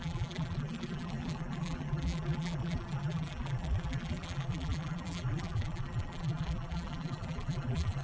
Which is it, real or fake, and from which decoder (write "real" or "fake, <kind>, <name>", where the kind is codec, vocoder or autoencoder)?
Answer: fake, vocoder, BigVGAN v2